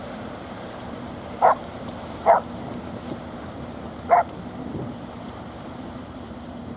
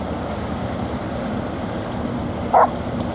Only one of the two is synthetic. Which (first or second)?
first